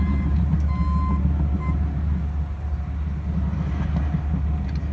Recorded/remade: recorded